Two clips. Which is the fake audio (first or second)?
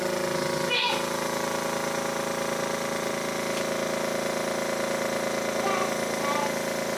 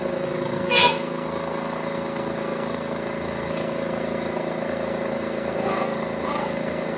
second